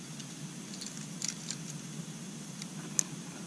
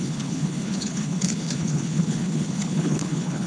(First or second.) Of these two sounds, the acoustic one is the first